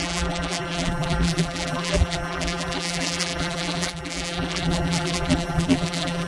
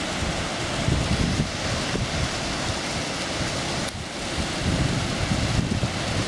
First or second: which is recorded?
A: second